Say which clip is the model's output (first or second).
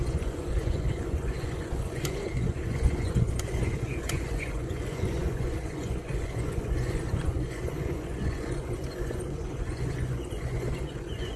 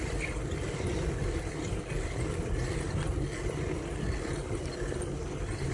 first